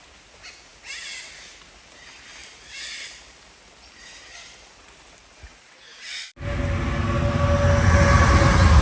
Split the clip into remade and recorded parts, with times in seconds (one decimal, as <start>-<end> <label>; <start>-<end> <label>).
0.0-8.8 recorded